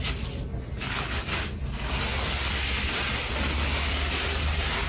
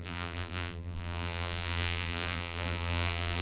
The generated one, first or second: second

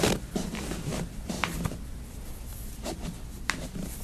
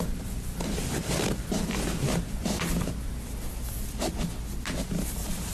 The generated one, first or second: first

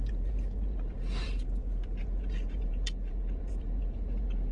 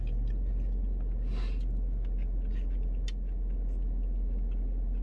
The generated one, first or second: first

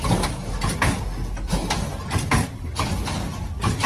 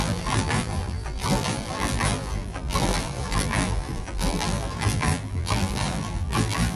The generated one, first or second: second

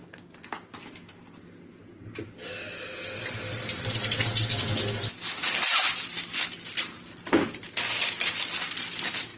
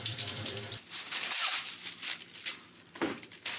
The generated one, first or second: second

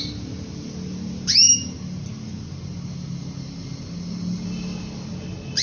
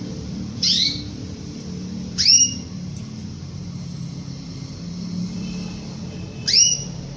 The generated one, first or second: second